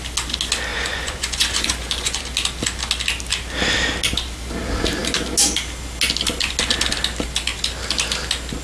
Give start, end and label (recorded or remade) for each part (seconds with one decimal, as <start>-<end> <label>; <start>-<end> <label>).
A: 0.0-0.7 recorded; 0.7-2.2 remade; 2.2-8.6 recorded